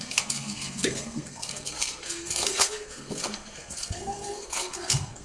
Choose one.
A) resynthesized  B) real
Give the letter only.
A